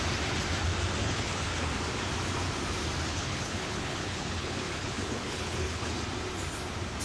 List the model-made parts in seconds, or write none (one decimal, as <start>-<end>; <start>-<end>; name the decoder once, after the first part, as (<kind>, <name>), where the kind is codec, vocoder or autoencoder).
1.0-1.7 (codec, HILCodec); 3.1-5.9